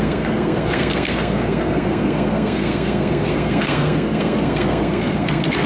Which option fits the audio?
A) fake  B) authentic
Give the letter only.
A